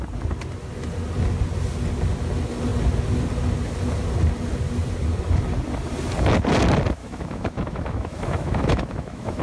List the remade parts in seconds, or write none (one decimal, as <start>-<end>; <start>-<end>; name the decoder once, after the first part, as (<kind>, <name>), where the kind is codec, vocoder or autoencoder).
7.0-9.4 (autoencoder, DAC-VAE)

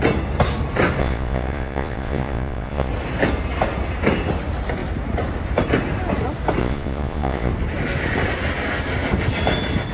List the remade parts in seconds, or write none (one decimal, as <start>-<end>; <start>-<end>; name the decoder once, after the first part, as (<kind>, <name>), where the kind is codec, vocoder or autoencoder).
1.0-2.9 (vocoder, Vocos); 6.6-7.5

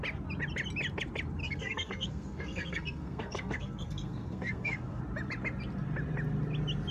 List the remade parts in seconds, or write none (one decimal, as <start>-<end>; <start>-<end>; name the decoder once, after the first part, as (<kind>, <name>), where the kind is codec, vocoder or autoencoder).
1.4-5.0 (codec, SNAC)